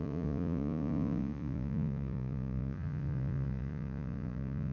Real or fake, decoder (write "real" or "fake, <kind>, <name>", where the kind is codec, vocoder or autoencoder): fake, vocoder, Vocos